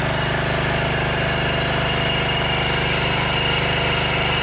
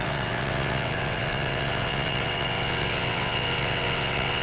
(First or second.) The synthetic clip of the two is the second